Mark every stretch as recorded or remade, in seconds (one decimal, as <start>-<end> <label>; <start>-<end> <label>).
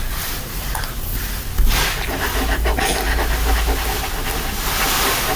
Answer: 0.0-5.4 recorded